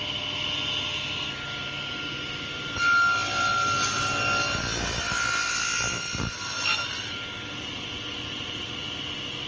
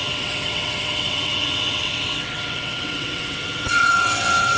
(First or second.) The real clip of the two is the first